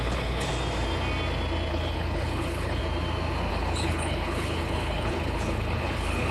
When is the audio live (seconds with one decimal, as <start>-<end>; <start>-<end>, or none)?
0.5-1.7; 2.8-3.5